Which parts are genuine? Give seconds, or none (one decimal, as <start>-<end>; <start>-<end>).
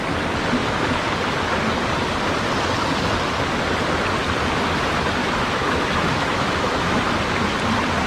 0.0-5.2; 7.0-8.1